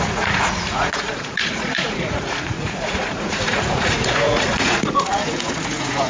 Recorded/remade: remade